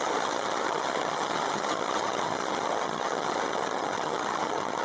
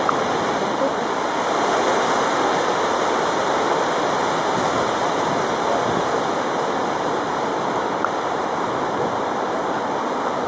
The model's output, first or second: first